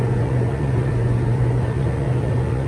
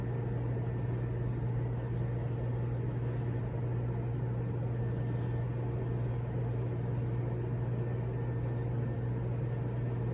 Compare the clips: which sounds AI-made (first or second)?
first